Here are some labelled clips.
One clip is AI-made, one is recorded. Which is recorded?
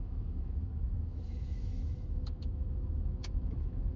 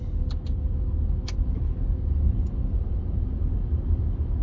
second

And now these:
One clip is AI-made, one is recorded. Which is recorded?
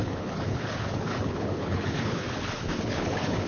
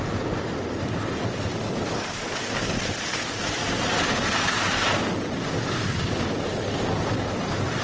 second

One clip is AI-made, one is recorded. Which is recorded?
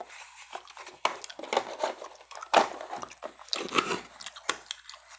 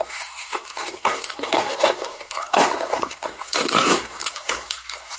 first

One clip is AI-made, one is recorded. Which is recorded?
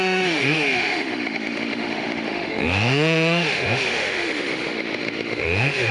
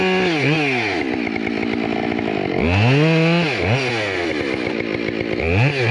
second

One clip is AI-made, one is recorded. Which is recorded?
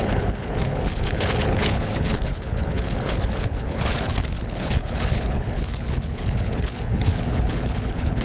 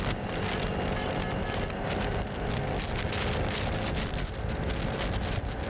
second